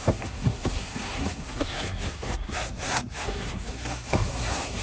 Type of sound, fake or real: fake